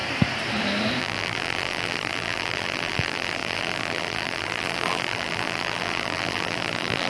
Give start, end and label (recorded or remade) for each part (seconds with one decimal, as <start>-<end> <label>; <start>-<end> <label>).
0.0-1.0 recorded; 1.0-7.1 remade